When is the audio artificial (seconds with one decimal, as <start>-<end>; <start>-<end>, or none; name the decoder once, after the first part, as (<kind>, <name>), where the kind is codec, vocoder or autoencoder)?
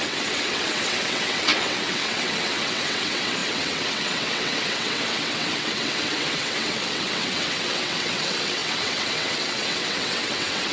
0.0-10.7 (vocoder, WaveNeXt)